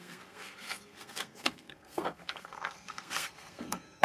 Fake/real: fake